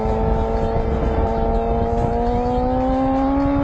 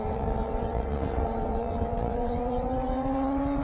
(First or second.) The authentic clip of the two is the first